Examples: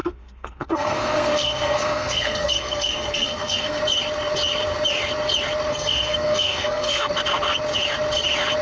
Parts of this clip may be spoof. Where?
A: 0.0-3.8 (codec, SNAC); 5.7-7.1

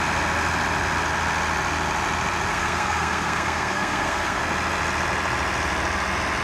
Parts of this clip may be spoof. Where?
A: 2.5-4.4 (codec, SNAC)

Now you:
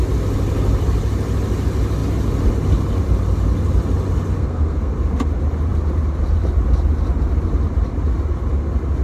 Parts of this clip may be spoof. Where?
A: 4.4-4.9 (codec, SNAC)

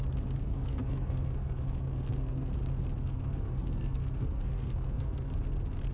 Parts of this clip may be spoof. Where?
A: 0.4-2.5 (codec, SNAC); 3.0-5.3

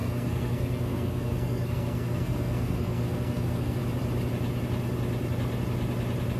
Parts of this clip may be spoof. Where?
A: 0.0-3.8 (codec, SNAC)

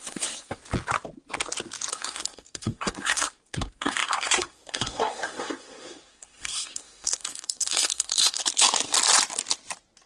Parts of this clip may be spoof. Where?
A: 0.0-0.6 (codec, SNAC); 1.9-8.4